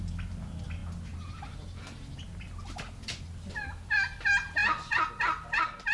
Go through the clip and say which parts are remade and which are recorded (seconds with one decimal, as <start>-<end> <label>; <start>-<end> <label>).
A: 0.0-4.6 recorded; 4.6-5.1 remade; 5.1-5.9 recorded